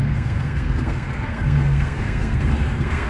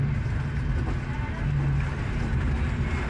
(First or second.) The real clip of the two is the second